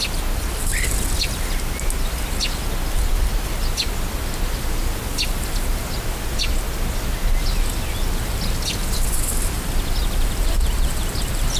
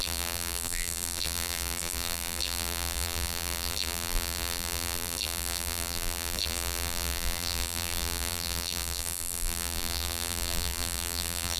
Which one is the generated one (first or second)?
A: second